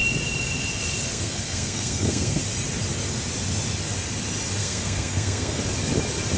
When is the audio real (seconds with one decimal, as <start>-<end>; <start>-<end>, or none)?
0.0-1.1; 2.4-4.6; 5.6-6.4